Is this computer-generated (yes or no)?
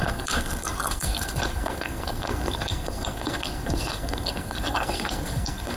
yes